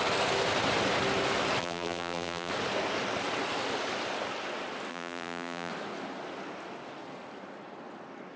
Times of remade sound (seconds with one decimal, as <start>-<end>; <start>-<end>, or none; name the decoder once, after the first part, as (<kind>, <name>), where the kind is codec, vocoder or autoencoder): 1.6-2.5 (vocoder, BigVGAN v2); 4.9-5.7